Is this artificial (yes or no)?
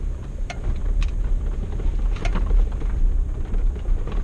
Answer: yes